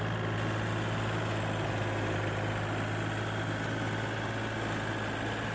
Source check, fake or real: real